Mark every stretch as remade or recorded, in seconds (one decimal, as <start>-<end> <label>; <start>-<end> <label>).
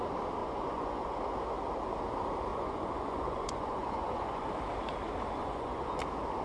0.0-0.4 recorded; 0.4-1.2 remade; 1.2-2.5 recorded; 2.5-4.5 remade; 4.5-5.4 recorded; 5.4-6.0 remade; 6.0-6.4 recorded